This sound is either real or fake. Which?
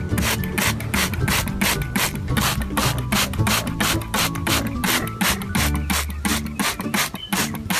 real